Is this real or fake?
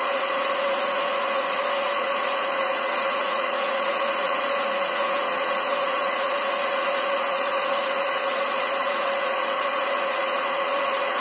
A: fake